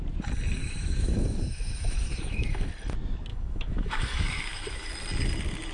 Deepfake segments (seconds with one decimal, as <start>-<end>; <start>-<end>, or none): 0.6-2.7; 3.3-4.9